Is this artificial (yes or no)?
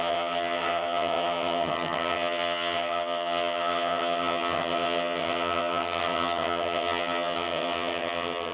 yes